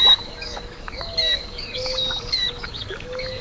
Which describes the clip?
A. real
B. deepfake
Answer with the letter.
B